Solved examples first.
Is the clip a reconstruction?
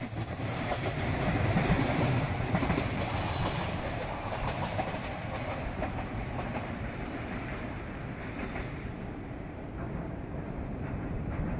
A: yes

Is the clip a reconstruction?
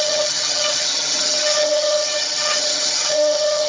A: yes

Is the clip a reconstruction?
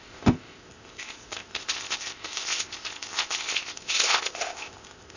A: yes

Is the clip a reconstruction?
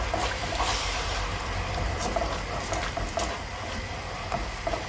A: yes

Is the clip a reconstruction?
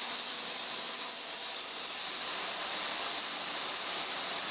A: yes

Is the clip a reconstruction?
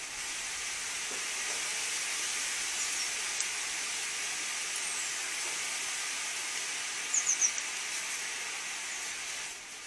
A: no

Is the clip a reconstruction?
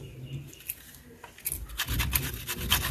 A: no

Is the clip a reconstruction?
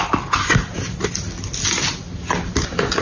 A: no